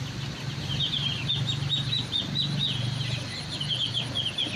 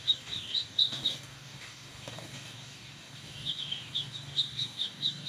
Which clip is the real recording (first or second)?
first